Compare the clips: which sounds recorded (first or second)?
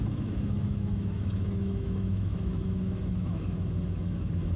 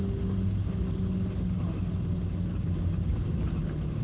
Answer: second